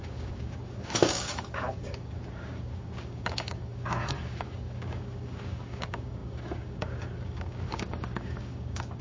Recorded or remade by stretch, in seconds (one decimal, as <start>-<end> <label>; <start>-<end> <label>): 0.0-9.0 remade